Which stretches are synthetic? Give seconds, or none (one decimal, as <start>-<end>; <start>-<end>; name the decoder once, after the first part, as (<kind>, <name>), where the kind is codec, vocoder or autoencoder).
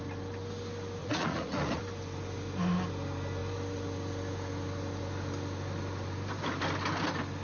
1.0-1.8 (vocoder, Vocos)